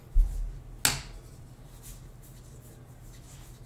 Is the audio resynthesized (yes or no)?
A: no